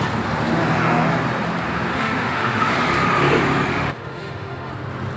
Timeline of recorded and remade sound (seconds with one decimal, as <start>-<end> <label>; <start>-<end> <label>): 0.0-1.9 recorded; 1.9-2.7 remade; 2.7-3.7 recorded; 3.7-4.7 remade; 4.7-5.2 recorded